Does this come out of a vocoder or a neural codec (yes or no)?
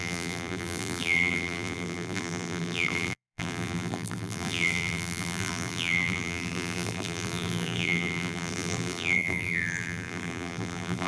yes